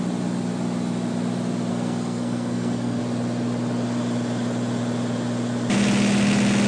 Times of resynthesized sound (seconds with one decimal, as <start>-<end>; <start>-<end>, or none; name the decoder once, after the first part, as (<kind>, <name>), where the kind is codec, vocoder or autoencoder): 1.7-3.0 (codec, SNAC)